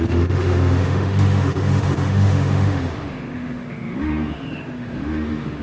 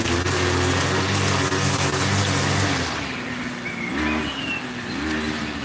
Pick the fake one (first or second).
first